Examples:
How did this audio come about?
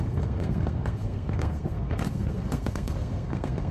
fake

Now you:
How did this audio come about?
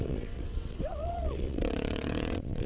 fake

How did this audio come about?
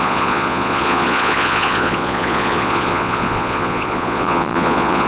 fake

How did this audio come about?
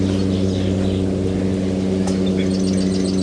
real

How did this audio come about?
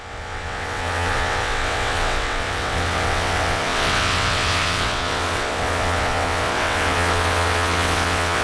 fake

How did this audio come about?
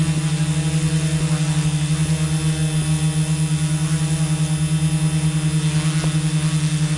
real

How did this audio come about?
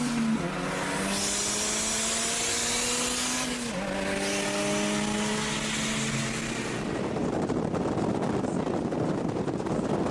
real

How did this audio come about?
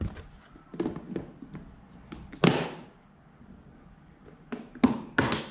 real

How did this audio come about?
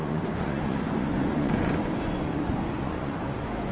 fake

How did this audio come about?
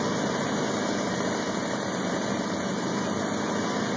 real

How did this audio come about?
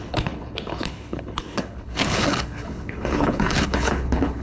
fake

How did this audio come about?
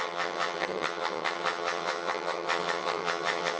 fake